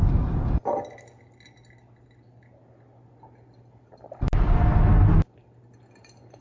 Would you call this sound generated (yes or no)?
no